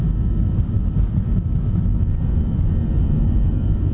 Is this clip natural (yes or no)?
yes